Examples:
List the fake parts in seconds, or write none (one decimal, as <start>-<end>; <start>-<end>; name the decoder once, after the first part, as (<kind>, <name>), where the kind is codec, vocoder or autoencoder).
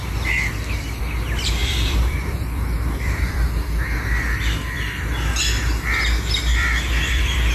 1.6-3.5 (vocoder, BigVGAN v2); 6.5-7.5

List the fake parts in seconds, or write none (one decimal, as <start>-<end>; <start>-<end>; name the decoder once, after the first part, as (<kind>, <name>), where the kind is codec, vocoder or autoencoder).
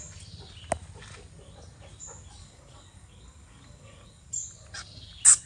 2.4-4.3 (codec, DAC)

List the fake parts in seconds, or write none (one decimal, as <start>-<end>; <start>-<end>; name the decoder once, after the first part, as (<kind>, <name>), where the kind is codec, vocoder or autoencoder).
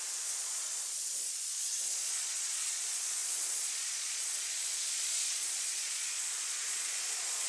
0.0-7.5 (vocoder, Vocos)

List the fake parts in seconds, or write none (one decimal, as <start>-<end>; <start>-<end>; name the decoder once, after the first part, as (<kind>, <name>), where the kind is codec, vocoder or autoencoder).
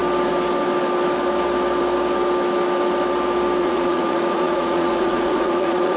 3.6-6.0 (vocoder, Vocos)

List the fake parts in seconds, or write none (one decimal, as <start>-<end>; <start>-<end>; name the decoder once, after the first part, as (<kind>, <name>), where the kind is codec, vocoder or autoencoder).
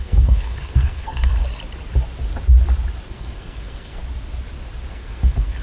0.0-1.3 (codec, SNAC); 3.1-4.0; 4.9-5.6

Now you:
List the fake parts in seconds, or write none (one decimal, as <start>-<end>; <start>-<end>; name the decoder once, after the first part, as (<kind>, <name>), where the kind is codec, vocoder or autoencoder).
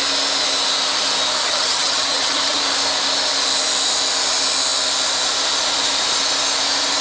1.4-2.6 (vocoder, HiFi-GAN)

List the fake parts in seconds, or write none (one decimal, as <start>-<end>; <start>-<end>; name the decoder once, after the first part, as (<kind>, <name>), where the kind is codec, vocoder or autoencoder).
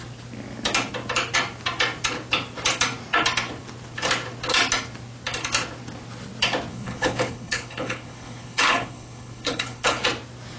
6.7-10.0 (codec, HILCodec)